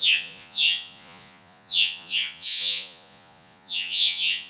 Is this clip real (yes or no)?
no